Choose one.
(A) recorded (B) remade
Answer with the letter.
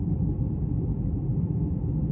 A